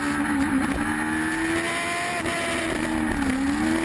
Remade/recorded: recorded